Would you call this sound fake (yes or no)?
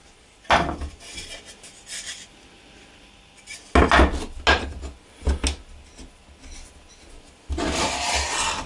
no